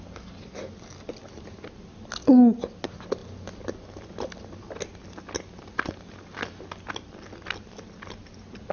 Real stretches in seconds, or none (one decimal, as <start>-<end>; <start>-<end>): 0.0-8.7